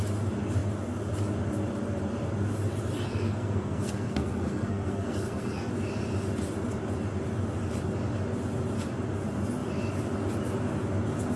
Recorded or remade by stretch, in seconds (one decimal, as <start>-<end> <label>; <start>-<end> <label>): 0.0-3.1 recorded; 3.1-5.7 remade; 5.7-11.4 recorded